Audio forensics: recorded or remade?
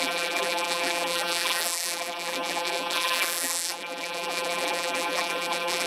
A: remade